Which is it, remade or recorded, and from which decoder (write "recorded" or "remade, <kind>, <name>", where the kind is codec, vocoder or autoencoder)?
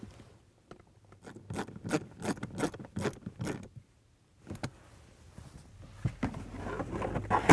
recorded